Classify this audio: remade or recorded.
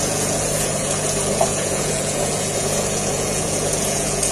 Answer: remade